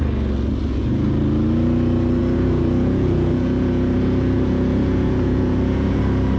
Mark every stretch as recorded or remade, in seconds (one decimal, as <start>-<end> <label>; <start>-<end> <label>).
0.0-0.7 recorded; 0.7-1.2 remade; 1.2-2.2 recorded; 2.2-6.0 remade; 6.0-6.4 recorded